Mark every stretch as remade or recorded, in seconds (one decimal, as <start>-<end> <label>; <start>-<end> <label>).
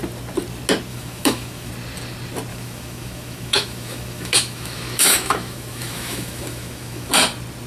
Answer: 0.0-0.9 recorded; 0.9-1.7 remade; 1.7-2.5 recorded; 2.5-7.1 remade; 7.1-7.7 recorded